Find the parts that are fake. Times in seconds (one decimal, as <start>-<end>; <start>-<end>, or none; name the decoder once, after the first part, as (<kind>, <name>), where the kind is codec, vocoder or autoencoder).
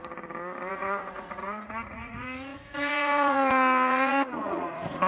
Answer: 0.7-5.1 (vocoder, Vocos)